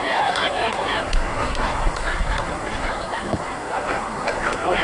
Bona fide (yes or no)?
no